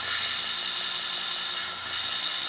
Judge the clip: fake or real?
real